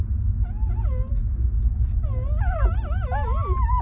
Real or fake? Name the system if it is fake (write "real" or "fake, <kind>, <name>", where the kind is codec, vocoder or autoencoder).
real